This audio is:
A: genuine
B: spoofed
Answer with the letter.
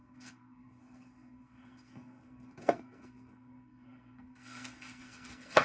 B